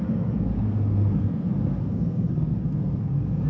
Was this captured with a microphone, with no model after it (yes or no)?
no